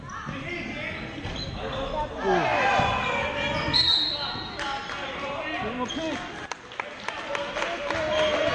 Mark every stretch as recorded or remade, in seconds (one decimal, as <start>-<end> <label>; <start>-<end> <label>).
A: 0.0-8.5 recorded